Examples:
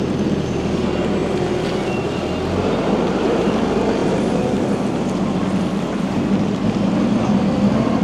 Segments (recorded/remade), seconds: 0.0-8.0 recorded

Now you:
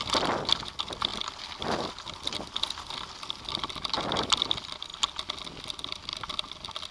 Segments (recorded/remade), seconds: 0.0-6.9 recorded

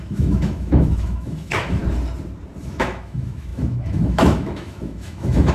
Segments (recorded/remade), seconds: 0.0-1.8 remade; 1.8-2.6 recorded; 2.6-5.5 remade

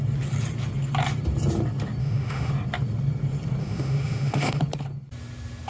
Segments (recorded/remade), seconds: 0.0-2.0 recorded; 2.0-2.5 remade; 2.5-3.6 recorded; 3.6-4.6 remade; 4.6-5.7 recorded

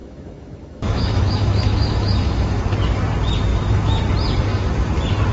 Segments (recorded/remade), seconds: 0.0-2.6 remade; 2.6-3.5 recorded; 3.5-4.0 remade; 4.0-5.3 recorded

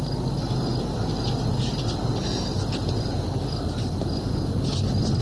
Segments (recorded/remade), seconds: 0.0-5.2 recorded